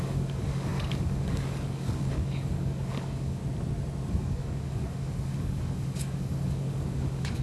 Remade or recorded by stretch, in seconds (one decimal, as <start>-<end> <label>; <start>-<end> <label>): 0.0-3.4 remade; 3.4-4.1 recorded; 4.1-7.4 remade